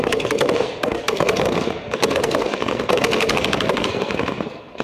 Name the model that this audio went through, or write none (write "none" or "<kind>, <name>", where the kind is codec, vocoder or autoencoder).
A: codec, SNAC